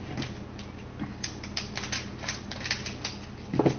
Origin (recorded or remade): recorded